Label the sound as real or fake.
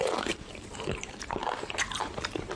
fake